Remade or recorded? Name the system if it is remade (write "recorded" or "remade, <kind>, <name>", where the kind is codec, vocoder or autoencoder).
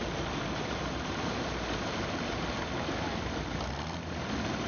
remade, vocoder, BigVGAN v2